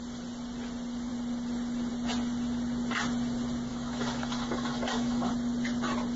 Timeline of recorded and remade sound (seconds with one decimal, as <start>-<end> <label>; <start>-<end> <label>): 0.0-3.7 recorded; 3.7-5.3 remade; 5.3-6.2 recorded